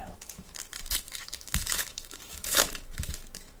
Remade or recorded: remade